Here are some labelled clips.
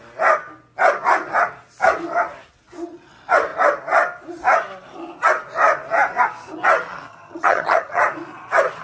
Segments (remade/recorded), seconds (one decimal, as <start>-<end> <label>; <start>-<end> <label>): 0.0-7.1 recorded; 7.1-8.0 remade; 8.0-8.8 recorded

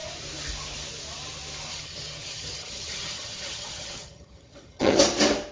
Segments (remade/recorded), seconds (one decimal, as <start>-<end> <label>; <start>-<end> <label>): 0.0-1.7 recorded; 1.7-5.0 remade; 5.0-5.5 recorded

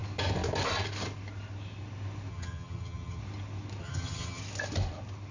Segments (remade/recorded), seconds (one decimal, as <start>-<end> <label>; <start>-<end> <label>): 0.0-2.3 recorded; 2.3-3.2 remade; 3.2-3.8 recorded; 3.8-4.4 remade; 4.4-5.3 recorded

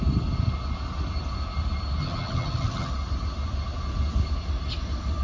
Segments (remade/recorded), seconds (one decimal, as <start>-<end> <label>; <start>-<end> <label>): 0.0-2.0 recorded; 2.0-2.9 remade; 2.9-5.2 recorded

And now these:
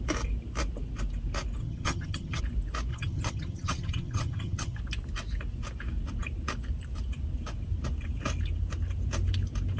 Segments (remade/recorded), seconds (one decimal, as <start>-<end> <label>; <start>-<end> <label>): 0.0-1.6 recorded; 1.6-2.4 remade; 2.4-2.9 recorded; 2.9-4.8 remade; 4.8-9.8 recorded